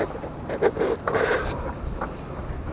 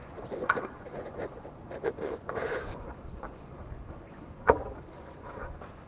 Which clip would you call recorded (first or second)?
first